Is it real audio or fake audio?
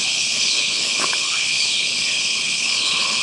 fake